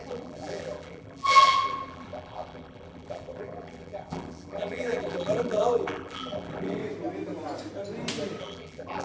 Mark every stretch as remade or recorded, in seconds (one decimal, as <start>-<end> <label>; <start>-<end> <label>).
0.0-6.8 remade; 6.8-8.4 recorded; 8.4-9.0 remade